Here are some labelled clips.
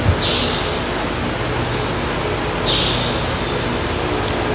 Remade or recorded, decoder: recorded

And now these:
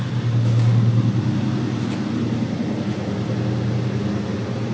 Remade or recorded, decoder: recorded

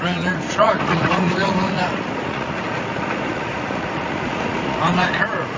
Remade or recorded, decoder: remade, vocoder, Vocos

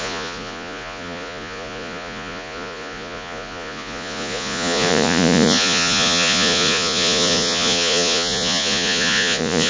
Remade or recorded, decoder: remade, vocoder, Vocos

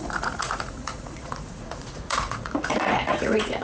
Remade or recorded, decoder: remade, vocoder, Vocos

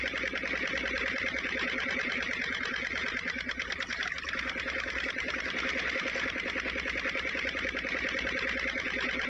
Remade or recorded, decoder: recorded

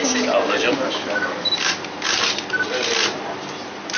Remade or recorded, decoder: recorded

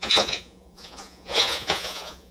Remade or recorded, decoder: remade, vocoder, Vocos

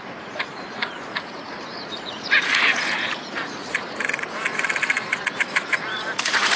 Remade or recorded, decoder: remade, vocoder, Vocos